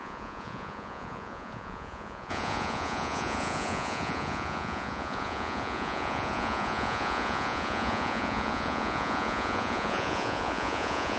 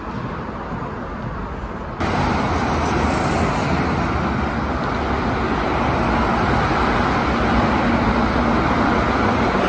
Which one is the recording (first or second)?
second